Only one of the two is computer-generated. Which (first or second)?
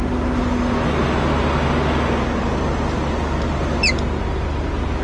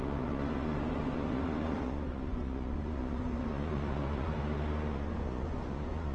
second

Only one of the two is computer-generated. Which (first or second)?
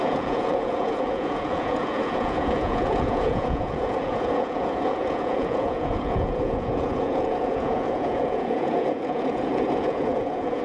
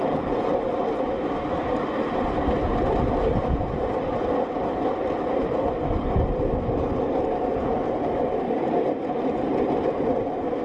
first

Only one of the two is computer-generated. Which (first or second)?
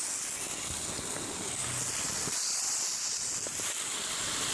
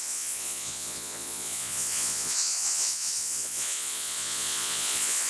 second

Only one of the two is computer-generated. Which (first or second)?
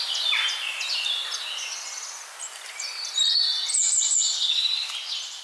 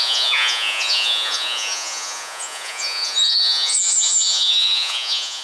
second